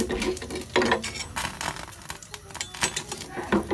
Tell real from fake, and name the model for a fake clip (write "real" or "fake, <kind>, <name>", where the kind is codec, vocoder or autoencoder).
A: real